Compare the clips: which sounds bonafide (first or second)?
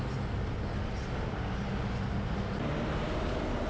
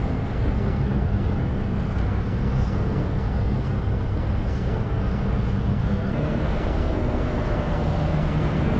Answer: first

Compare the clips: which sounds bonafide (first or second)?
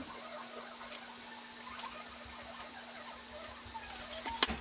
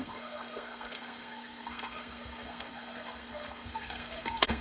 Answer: first